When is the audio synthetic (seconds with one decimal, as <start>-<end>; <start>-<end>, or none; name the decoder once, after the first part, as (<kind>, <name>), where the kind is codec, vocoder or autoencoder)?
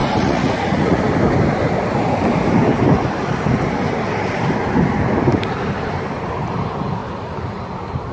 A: 0.0-1.0 (vocoder, Vocos)